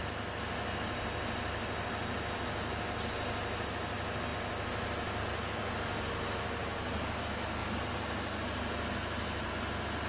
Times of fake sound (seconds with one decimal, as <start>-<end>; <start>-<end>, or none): none